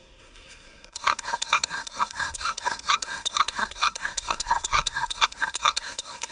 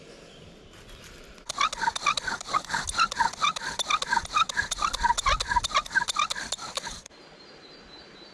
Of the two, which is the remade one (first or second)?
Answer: first